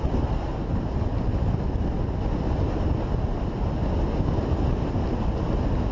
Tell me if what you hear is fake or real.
real